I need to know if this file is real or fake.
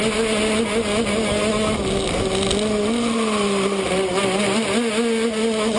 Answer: real